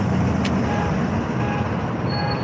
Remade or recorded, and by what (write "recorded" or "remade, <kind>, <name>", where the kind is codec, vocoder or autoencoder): recorded